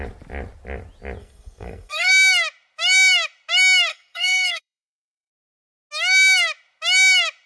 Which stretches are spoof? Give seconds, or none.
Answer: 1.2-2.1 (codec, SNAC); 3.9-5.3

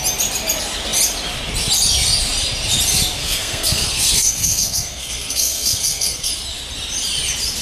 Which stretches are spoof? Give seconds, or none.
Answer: 3.2-6.3 (codec, SNAC)

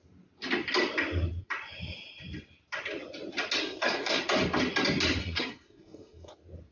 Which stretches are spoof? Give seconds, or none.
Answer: 3.6-4.2 (codec, SNAC); 5.2-6.3

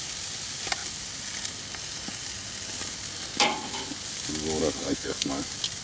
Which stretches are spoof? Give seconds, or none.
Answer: 4.8-5.3 (codec, SNAC)

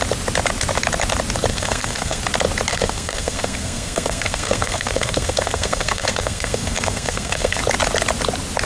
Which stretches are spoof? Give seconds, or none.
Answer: 1.5-2.2 (codec, SNAC); 2.7-7.6

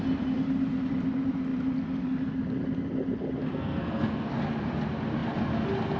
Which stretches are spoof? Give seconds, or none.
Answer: 3.5-4.3 (codec, SNAC)

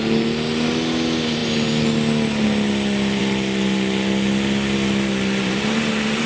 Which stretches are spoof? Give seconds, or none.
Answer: none

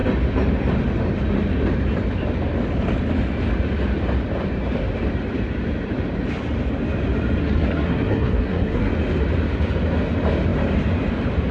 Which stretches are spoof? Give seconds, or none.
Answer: 7.4-8.9 (codec, SNAC)